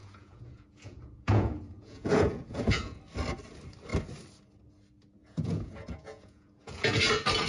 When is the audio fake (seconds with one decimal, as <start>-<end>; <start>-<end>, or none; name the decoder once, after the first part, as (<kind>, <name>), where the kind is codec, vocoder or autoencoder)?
0.0-3.0 (vocoder, Vocos); 5.2-7.0